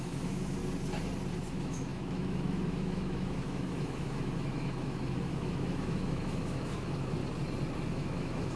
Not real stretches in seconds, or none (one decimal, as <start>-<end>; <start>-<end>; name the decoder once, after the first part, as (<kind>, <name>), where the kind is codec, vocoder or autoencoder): 0.0-0.6 (autoencoder, DAC-VAE); 1.5-7.2; 7.9-8.6